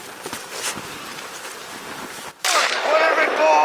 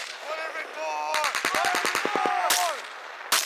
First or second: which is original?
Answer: second